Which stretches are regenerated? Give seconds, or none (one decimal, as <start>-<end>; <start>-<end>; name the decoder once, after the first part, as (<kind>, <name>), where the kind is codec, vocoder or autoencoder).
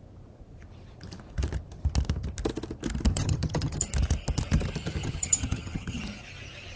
3.1-3.8 (vocoder, HiFi-GAN); 5.0-6.0